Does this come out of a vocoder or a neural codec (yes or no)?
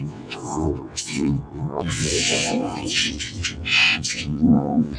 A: yes